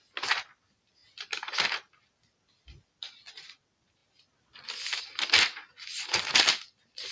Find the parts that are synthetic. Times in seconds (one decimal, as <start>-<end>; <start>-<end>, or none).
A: none